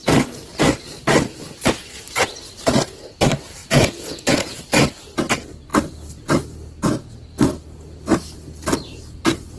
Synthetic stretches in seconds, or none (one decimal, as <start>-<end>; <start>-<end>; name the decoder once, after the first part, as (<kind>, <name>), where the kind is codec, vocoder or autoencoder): 3.6-4.6 (vocoder, Vocos)